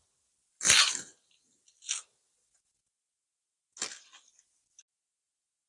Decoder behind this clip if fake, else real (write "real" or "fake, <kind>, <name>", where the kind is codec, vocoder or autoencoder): real